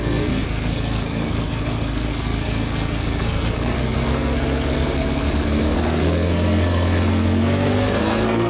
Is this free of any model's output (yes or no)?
no